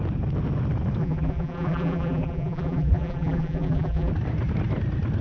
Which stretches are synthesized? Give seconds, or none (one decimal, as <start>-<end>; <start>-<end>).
1.0-4.1